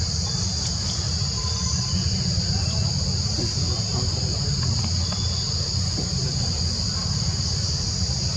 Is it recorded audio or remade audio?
recorded